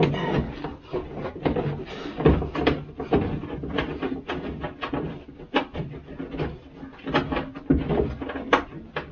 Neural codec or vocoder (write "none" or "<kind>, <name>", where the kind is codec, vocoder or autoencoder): none